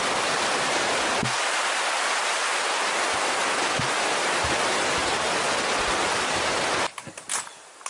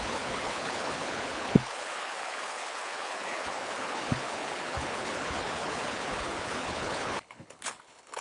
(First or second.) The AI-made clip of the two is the second